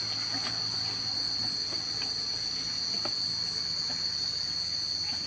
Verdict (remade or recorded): recorded